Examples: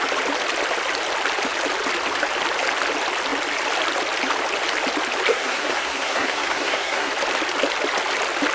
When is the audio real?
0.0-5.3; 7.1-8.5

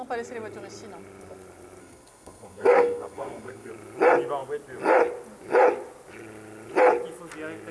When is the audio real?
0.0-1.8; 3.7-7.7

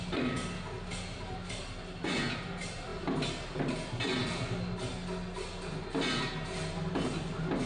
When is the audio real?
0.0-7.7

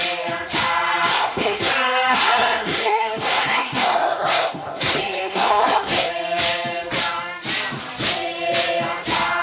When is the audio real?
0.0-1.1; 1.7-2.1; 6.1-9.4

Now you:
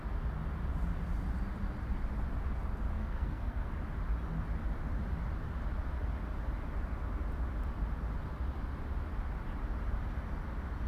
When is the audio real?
0.0-2.9; 3.8-10.9

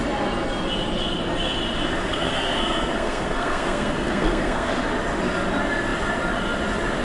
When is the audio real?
0.0-2.1; 4.7-7.0